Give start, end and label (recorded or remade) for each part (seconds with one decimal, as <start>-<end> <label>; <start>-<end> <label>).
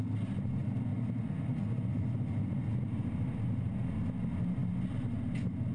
0.0-5.7 recorded